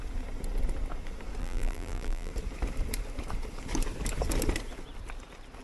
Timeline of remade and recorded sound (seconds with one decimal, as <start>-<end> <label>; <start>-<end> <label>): 0.0-1.4 recorded; 1.4-2.3 remade; 2.3-5.6 recorded